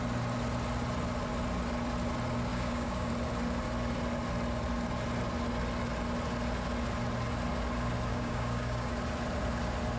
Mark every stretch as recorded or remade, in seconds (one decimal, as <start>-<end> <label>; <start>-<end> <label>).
0.0-2.5 recorded; 2.5-3.1 remade; 3.1-8.1 recorded; 8.1-8.9 remade; 8.9-10.0 recorded

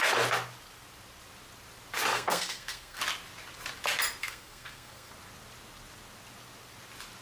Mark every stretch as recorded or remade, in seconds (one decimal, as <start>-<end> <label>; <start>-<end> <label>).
0.0-2.1 recorded; 2.1-3.0 remade; 3.0-4.2 recorded; 4.2-5.1 remade; 5.1-7.2 recorded